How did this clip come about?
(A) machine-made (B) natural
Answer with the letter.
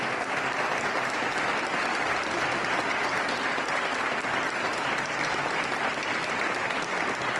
B